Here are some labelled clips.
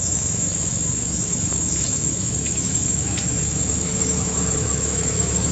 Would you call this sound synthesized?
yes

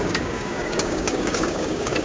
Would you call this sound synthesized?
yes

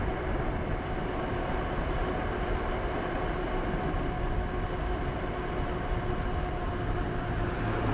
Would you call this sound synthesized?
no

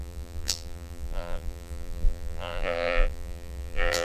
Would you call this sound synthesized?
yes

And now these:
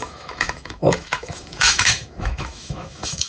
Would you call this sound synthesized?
yes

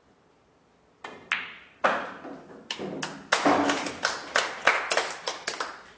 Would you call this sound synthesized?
no